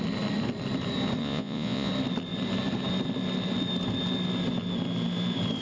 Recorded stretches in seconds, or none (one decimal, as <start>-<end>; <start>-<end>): 0.0-1.2; 1.9-5.6